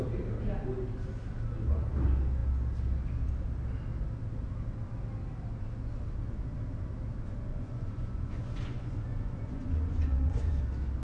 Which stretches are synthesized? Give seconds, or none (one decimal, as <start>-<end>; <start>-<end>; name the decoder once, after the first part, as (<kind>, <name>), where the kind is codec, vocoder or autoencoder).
7.5-10.6 (vocoder, Vocos)